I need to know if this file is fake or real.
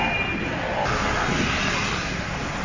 real